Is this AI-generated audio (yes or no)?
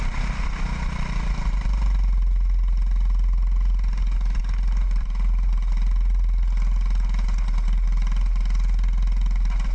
no